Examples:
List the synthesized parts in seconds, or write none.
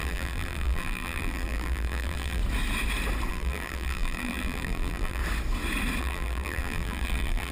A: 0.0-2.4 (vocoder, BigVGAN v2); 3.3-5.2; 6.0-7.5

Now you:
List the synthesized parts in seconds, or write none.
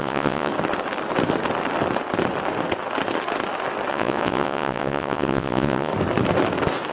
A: 0.0-0.5 (vocoder, WaveNeXt); 3.9-5.9